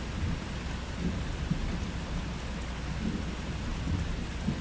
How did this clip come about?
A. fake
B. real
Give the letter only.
B